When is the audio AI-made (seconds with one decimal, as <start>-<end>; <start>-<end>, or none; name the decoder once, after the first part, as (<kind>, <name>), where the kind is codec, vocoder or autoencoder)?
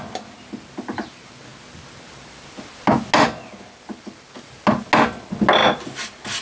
none